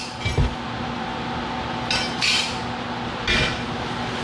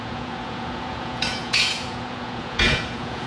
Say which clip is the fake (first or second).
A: second